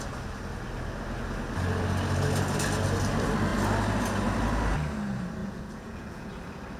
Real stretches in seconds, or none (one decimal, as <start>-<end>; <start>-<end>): 0.0-5.4; 6.3-6.8

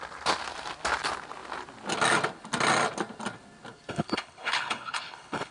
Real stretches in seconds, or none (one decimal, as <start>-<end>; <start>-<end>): 0.0-3.9

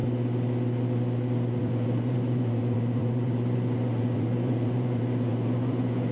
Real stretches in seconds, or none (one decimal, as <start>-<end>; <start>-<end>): 0.0-1.6

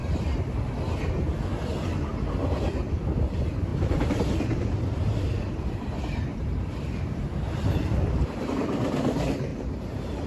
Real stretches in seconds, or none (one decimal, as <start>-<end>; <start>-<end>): 0.5-3.7; 8.5-9.5

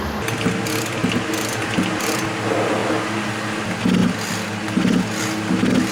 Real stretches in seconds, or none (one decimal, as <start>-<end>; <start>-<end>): 0.0-5.9

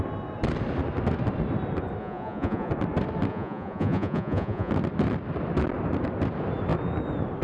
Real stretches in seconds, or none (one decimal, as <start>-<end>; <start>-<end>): 0.0-2.0; 2.7-3.3; 4.7-7.4

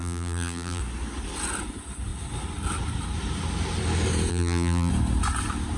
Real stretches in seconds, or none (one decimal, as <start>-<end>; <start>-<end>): 0.8-4.3; 4.9-5.8